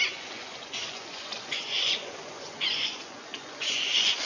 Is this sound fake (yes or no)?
yes